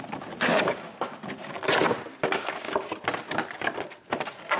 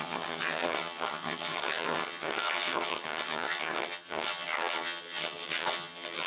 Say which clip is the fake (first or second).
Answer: second